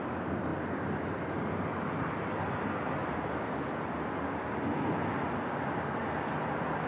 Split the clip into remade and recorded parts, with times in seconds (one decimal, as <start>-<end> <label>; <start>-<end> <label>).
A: 0.0-6.9 recorded

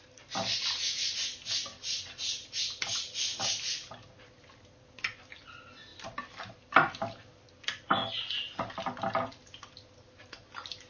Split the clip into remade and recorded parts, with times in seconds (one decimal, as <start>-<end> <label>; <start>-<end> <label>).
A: 0.0-10.9 recorded

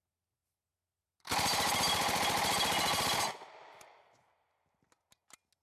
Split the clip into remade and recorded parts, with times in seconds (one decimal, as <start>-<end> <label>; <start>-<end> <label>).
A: 0.0-5.6 recorded

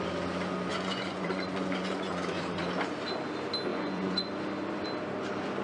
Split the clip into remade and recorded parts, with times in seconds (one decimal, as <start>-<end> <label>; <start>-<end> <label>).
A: 0.0-0.7 recorded; 0.7-2.6 remade; 2.6-3.7 recorded; 3.7-4.3 remade; 4.3-5.6 recorded

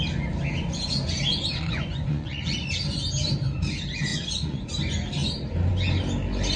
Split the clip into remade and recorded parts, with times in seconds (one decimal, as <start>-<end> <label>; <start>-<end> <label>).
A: 0.0-1.3 recorded; 1.3-2.7 remade; 2.7-4.1 recorded; 4.1-4.7 remade; 4.7-6.6 recorded

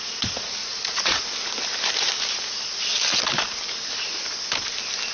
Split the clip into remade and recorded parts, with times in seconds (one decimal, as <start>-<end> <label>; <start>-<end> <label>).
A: 0.0-0.6 recorded; 0.6-1.2 remade; 1.2-5.1 recorded